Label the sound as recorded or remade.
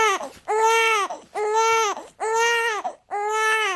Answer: recorded